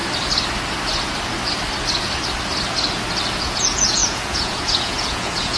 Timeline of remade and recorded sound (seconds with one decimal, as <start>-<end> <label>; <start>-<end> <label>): 0.0-3.4 recorded; 3.4-5.6 remade